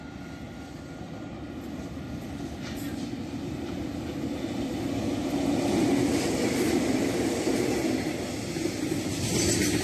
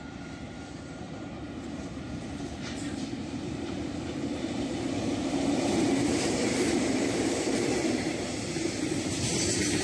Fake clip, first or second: second